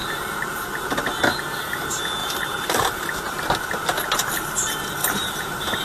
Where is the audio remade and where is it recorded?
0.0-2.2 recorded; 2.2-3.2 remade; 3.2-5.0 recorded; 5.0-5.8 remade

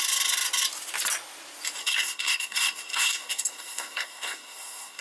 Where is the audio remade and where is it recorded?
0.0-1.8 recorded; 1.8-5.0 remade

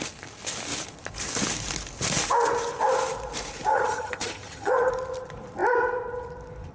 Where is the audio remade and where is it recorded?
0.0-3.7 recorded; 3.7-4.9 remade; 4.9-6.7 recorded

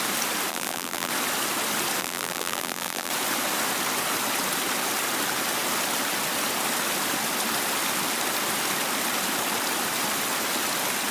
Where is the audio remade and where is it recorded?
0.0-0.5 recorded; 0.5-1.1 remade; 1.1-2.0 recorded; 2.0-3.1 remade; 3.1-11.1 recorded

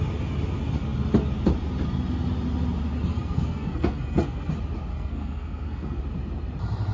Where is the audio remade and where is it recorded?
0.0-3.1 recorded; 3.1-4.5 remade; 4.5-4.9 recorded; 4.9-6.0 remade; 6.0-6.9 recorded